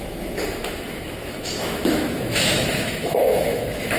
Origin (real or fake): fake